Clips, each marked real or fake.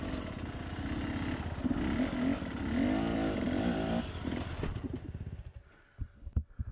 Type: real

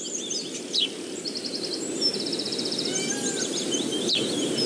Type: real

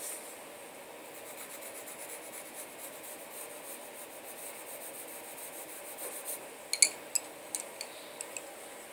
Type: real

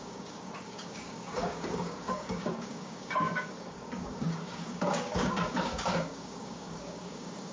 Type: fake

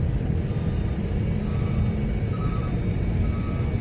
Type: real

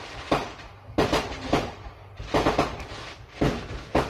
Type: real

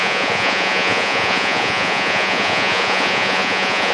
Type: fake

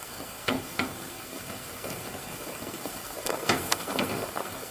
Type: fake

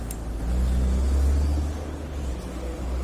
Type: real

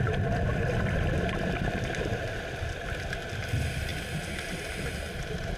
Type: fake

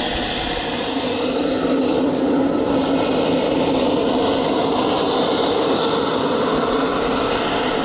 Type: real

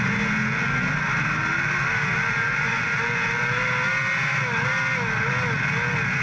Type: real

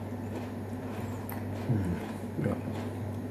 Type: real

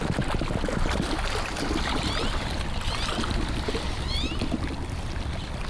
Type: real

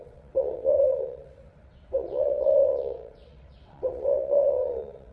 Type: fake